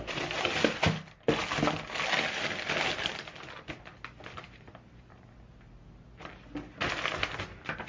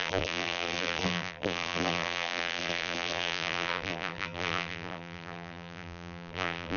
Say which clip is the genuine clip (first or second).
first